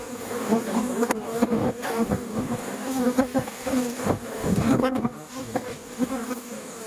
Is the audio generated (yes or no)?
yes